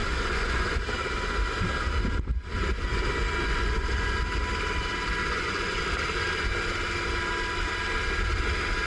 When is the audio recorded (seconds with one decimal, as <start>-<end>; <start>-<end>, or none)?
0.8-3.4; 4.2-5.2; 5.8-8.9